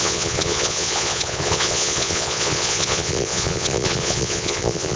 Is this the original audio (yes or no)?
no